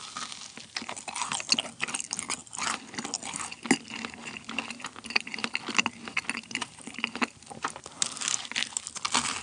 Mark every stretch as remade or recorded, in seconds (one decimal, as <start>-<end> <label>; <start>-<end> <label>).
0.0-9.4 recorded